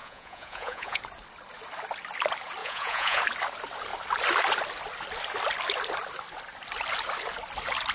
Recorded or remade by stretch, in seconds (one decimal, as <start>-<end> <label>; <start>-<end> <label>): 0.0-1.0 remade; 1.0-2.6 recorded; 2.6-3.2 remade; 3.2-7.9 recorded